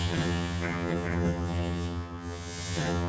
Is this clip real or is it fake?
fake